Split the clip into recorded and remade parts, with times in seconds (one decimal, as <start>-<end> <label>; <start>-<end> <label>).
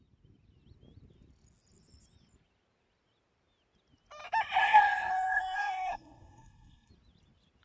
0.0-4.6 recorded; 4.6-6.9 remade; 6.9-7.6 recorded